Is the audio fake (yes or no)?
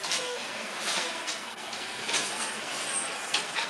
yes